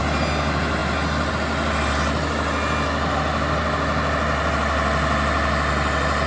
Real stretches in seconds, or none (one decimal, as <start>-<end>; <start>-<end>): 0.0-6.3

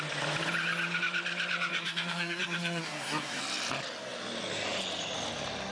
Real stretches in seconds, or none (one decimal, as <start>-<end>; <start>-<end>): 0.0-1.7; 3.4-5.7